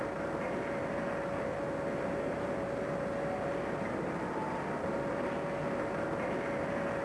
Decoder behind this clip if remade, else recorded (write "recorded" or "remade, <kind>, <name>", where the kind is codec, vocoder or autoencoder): recorded